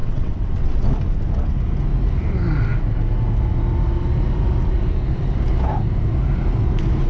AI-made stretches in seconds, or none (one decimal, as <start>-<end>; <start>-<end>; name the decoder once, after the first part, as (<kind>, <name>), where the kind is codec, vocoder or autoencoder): 0.0-0.9 (vocoder, WaveNeXt)

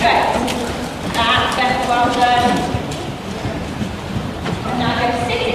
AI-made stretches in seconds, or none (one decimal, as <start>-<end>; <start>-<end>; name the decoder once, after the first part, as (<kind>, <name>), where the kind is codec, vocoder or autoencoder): 0.0-5.5 (vocoder, BigVGAN v2)